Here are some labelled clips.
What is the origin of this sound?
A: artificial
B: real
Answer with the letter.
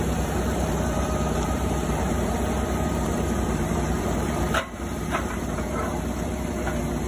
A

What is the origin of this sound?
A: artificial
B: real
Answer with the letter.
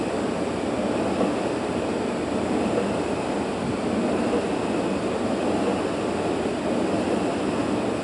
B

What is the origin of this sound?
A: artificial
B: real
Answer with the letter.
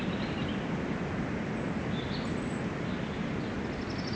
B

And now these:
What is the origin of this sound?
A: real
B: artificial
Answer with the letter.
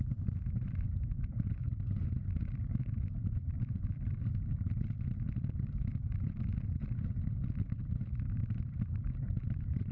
B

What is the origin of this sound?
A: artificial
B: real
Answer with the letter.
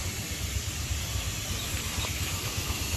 A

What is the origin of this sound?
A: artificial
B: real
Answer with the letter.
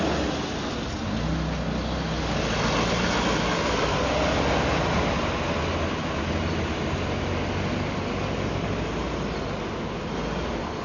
B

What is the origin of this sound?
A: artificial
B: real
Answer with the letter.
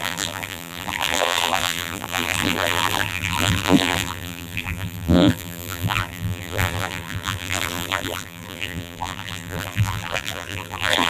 A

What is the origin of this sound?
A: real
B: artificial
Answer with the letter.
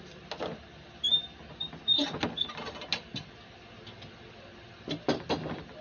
A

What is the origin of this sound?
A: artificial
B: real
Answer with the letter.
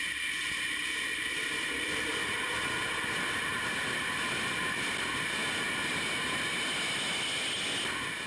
B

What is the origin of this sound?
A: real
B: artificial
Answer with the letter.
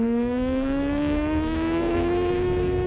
B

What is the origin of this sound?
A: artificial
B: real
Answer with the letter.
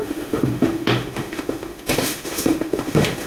A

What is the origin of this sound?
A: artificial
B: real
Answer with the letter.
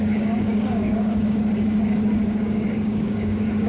A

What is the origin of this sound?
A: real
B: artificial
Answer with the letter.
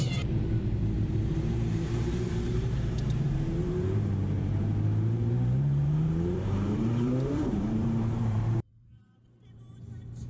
B